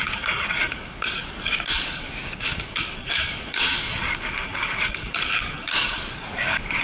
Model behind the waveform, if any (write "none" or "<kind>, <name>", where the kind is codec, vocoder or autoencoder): codec, DAC